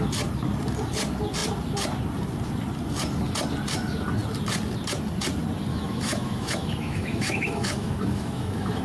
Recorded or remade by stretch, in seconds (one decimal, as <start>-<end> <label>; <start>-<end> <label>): 0.0-5.7 recorded; 5.7-8.8 remade